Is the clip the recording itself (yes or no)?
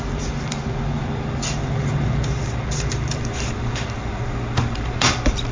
no